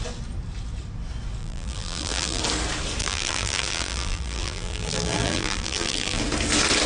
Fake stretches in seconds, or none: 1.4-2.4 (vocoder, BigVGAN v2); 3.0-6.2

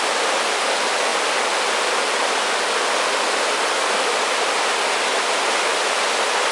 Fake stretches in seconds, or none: none

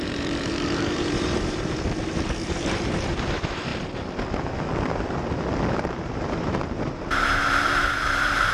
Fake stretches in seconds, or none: 0.0-3.7 (vocoder, BigVGAN v2); 5.7-8.5

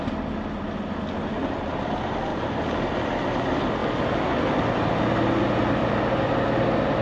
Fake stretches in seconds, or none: 5.8-6.4 (vocoder, BigVGAN v2)